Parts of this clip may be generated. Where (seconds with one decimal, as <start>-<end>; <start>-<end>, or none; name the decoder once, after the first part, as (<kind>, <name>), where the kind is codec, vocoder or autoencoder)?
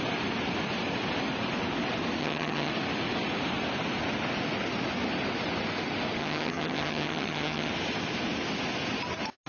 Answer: 2.2-2.7 (vocoder, HiFi-GAN); 6.2-7.7